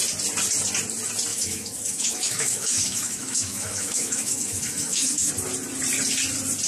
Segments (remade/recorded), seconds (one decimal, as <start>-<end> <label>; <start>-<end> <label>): 0.0-1.3 recorded; 1.3-5.3 remade; 5.3-6.7 recorded